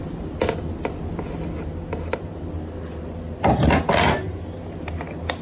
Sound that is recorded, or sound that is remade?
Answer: recorded